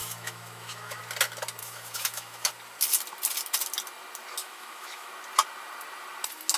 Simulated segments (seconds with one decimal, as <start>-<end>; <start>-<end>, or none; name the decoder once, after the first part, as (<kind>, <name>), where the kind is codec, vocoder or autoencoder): 0.0-1.0 (autoencoder, DAC-VAE); 1.6-2.5; 4.4-5.1